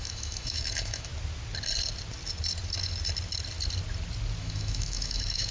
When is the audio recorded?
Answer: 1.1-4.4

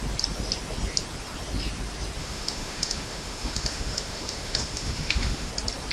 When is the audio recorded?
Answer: 0.0-2.2; 5.5-5.9

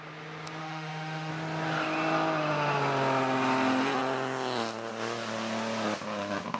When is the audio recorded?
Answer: 0.0-0.6; 1.3-6.6

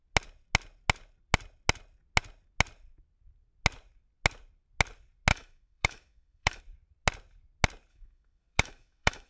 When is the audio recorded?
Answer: 0.0-5.3; 6.6-7.9

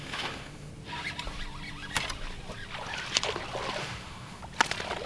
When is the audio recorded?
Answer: 0.7-3.8; 4.4-5.1

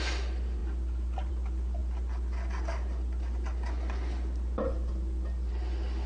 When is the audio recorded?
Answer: 0.0-6.1